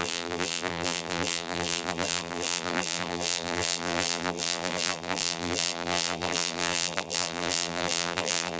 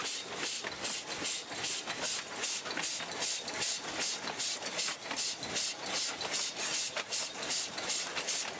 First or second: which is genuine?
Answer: second